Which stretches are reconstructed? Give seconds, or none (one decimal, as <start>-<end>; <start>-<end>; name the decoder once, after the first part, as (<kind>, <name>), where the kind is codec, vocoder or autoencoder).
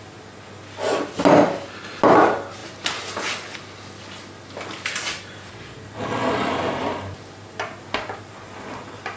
none